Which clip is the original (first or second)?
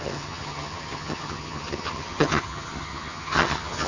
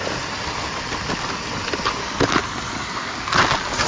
second